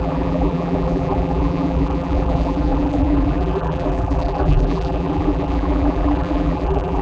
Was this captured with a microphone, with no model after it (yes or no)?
no